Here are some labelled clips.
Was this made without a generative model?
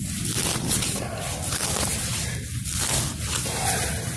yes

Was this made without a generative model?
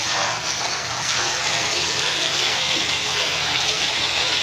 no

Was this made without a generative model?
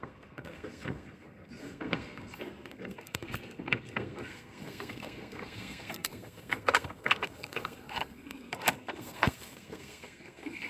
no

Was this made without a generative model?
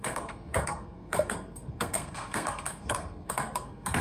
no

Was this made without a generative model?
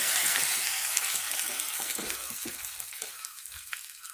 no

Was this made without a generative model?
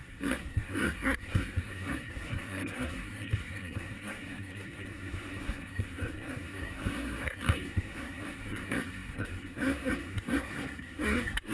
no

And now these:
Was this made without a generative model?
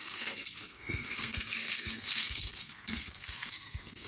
no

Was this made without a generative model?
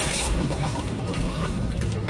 no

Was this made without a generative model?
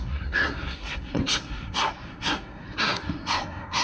no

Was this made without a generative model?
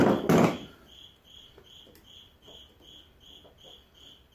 yes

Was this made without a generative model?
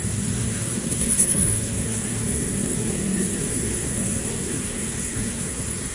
no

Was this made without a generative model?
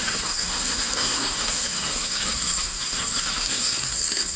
no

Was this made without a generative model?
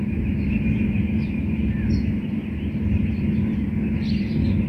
yes